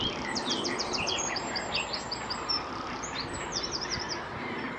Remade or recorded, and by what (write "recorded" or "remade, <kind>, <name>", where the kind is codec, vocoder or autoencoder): remade, vocoder, BigVGAN v2